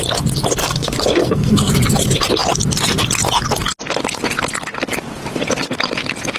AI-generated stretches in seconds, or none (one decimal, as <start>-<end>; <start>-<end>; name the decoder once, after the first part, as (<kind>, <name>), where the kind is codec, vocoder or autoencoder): 0.6-1.7 (codec, SNAC)